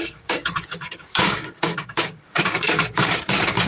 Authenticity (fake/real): fake